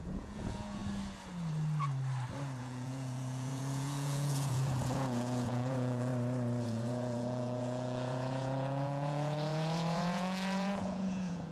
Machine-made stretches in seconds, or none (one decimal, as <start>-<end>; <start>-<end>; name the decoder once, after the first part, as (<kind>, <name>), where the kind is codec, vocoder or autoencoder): 0.0-0.8 (vocoder, Vocos); 2.6-6.1; 6.6-11.5

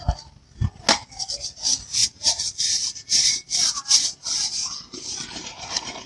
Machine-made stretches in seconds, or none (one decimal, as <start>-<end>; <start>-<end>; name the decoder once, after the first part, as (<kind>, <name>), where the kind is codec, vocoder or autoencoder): 2.0-6.1 (vocoder, BigVGAN v2)

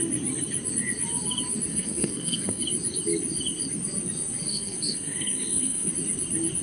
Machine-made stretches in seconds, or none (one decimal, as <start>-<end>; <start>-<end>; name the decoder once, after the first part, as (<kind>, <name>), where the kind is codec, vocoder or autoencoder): 1.7-2.6 (codec, SNAC); 4.5-5.9

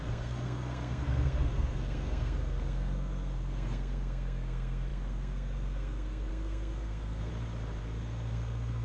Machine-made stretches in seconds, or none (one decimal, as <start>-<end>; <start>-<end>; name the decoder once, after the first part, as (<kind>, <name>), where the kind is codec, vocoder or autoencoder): 0.0-7.3 (codec, SNAC); 7.8-8.8

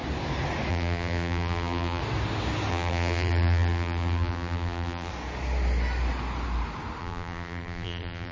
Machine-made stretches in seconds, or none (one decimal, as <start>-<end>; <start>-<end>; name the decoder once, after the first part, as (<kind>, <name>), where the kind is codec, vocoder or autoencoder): 0.7-2.0 (vocoder, BigVGAN v2); 2.7-5.1; 7.0-8.3

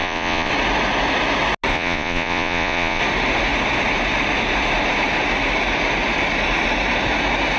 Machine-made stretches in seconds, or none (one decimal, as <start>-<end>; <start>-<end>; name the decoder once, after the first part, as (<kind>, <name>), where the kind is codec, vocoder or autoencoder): 0.0-0.5 (vocoder, Vocos); 1.7-3.0